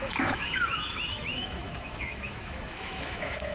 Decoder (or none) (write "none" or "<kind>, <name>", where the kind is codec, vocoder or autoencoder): autoencoder, DAC-VAE